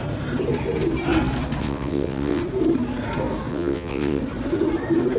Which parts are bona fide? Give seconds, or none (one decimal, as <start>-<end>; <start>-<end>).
0.0-1.6; 2.4-3.5; 4.2-5.2